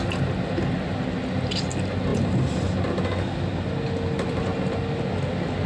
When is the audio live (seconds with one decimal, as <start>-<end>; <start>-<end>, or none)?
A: 0.0-5.7